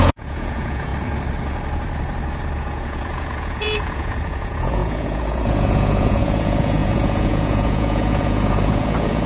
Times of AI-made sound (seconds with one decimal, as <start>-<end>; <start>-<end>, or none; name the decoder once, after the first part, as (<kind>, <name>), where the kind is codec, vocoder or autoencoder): 0.0-0.9 (vocoder, Vocos); 2.6-9.3